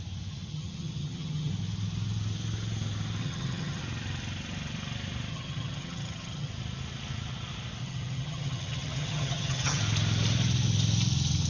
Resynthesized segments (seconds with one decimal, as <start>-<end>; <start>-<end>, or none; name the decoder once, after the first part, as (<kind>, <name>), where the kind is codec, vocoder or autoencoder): 0.5-1.5 (vocoder, HiFi-GAN); 3.2-3.8; 5.3-6.5; 7.8-9.8